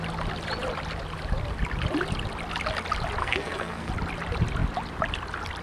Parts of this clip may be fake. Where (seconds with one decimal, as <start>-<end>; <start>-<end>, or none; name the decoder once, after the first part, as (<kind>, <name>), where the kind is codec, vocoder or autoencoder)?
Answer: 3.2-3.9 (codec, SNAC)